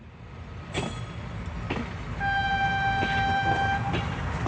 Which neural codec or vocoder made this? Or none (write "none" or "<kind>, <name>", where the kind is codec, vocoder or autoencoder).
none